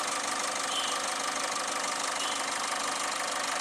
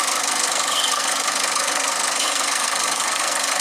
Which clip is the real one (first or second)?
first